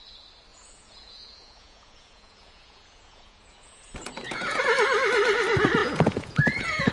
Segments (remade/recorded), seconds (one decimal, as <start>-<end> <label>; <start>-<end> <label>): 0.0-0.5 recorded; 0.5-4.6 remade; 4.6-5.8 recorded; 5.8-6.9 remade